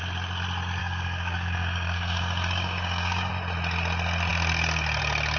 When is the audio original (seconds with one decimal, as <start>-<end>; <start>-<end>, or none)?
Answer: 0.0-0.8; 3.3-5.4

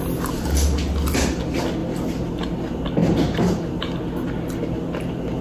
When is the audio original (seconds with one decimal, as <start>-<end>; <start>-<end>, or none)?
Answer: 0.0-3.0; 3.8-5.4

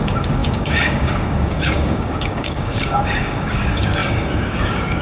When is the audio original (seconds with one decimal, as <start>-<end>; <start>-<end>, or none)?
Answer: none

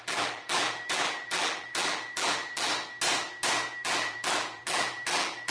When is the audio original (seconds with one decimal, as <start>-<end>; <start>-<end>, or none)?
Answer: 2.7-3.7

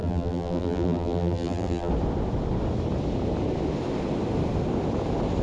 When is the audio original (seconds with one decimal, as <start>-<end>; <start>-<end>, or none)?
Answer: 1.9-5.4